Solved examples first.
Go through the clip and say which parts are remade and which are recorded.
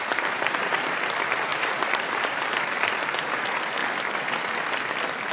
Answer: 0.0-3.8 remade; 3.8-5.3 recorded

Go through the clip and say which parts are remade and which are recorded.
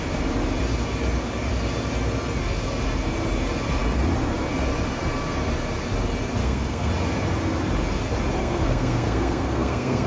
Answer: 0.0-6.4 recorded; 6.4-6.9 remade; 6.9-8.4 recorded; 8.4-10.1 remade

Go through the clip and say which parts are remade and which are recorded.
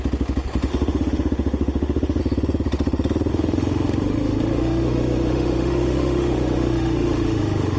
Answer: 0.0-0.7 recorded; 0.7-2.2 remade; 2.2-3.3 recorded; 3.3-7.8 remade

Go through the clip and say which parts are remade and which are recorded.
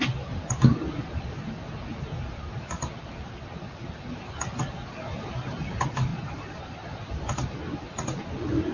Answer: 0.0-6.1 recorded; 6.1-7.0 remade; 7.0-8.7 recorded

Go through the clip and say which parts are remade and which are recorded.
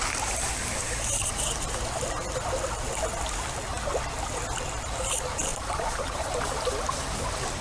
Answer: 0.0-5.5 recorded; 5.5-6.1 remade; 6.1-7.6 recorded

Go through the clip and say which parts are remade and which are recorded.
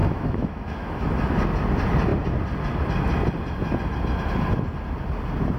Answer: 0.0-1.1 remade; 1.1-5.6 recorded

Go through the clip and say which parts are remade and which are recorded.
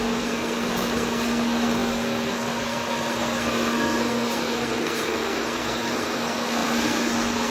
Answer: 0.0-7.5 remade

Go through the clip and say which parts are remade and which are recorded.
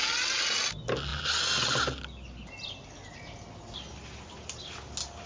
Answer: 0.0-5.3 recorded